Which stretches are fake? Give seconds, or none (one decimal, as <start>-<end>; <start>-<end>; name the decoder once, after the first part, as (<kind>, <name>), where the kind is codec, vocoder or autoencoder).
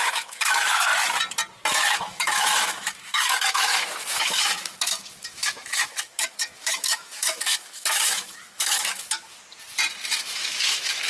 0.0-0.9 (autoencoder, DAC-VAE); 1.7-9.4; 10.1-11.1